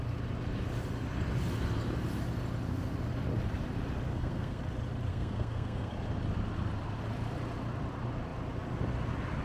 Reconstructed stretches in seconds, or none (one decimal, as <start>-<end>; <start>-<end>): 4.1-4.6; 5.1-5.9